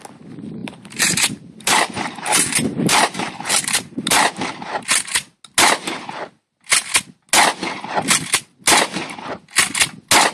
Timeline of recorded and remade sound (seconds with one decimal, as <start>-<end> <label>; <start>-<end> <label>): 0.0-0.6 recorded; 0.6-5.4 remade; 5.4-10.3 recorded

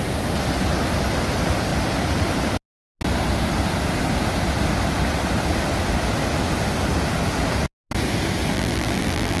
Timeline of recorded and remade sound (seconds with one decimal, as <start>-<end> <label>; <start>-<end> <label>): 0.0-8.5 recorded; 8.5-9.4 remade

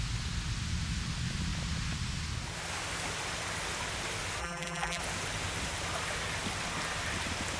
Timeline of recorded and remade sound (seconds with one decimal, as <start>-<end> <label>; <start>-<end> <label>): 0.0-4.4 recorded; 4.4-5.0 remade; 5.0-7.6 recorded

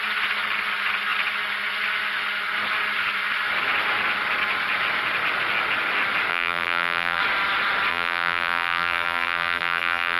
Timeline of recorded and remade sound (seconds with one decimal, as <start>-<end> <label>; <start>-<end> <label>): 0.0-6.3 recorded; 6.3-7.2 remade; 7.2-7.9 recorded; 7.9-10.2 remade

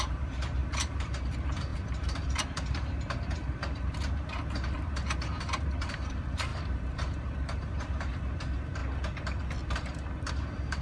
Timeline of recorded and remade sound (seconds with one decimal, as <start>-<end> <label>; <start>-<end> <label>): 0.0-8.8 remade; 8.8-10.3 recorded; 10.3-10.8 remade

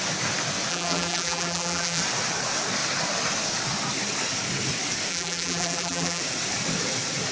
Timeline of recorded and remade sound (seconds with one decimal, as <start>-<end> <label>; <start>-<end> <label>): 0.0-0.7 recorded; 0.7-2.0 remade; 2.0-5.1 recorded; 5.1-6.2 remade; 6.2-7.3 recorded

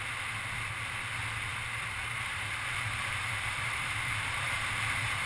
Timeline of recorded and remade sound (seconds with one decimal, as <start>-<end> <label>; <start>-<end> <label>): 0.0-1.5 recorded; 1.5-4.7 remade; 4.7-5.3 recorded

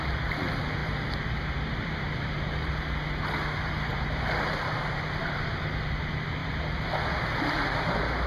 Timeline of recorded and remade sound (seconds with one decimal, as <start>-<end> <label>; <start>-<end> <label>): 0.0-0.8 recorded; 0.8-2.7 remade; 2.7-3.9 recorded; 3.9-5.6 remade; 5.6-6.4 recorded; 6.4-6.9 remade; 6.9-8.3 recorded